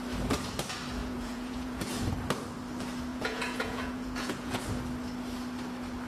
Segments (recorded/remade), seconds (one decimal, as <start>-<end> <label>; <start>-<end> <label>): 0.0-1.0 recorded; 1.0-1.8 remade; 1.8-3.1 recorded; 3.1-4.6 remade; 4.6-6.1 recorded